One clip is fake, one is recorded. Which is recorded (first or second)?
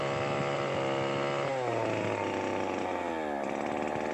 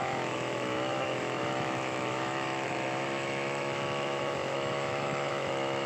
first